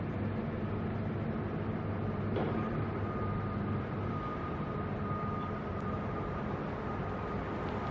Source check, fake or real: real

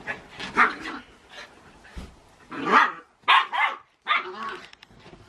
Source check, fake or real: real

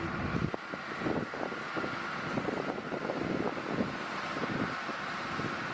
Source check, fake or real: real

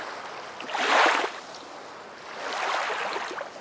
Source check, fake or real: real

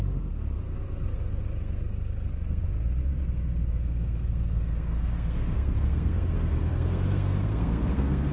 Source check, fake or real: fake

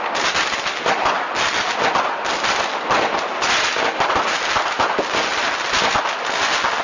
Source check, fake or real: real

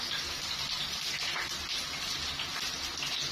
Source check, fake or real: real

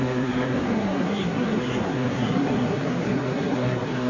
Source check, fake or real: fake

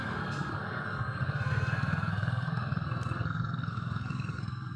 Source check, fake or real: fake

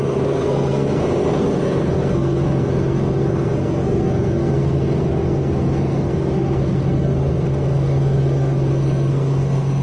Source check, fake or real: fake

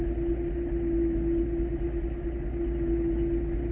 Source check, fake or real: real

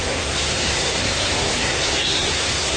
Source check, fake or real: fake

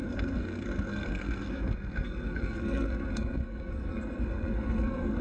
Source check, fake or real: fake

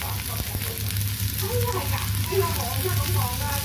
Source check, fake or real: real